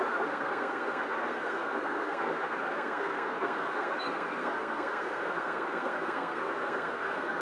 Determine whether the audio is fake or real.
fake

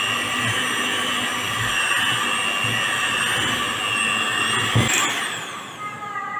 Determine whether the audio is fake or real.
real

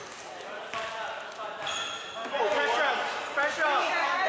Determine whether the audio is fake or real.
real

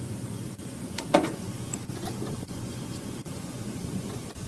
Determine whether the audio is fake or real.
fake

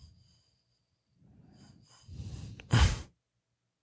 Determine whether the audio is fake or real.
real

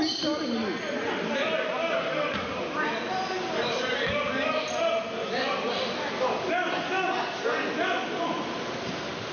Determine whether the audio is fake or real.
real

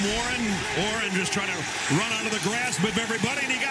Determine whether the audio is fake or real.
real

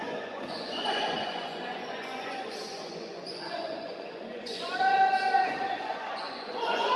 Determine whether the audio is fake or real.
fake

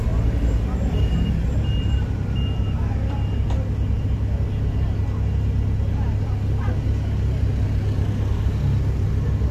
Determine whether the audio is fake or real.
real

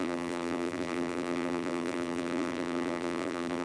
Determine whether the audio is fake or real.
fake